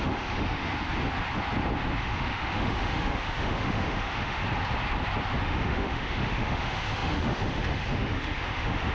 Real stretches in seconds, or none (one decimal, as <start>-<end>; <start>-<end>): 0.7-2.0; 4.4-5.4